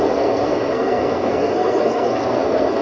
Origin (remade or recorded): remade